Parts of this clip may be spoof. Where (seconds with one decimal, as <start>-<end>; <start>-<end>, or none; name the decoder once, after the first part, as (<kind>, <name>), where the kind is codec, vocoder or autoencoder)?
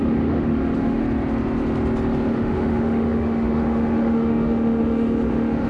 0.0-1.0 (autoencoder, DAC-VAE); 2.3-5.7